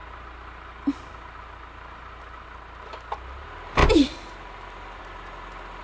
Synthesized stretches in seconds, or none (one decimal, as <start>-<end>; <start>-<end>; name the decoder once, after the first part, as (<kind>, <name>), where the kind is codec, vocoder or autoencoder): none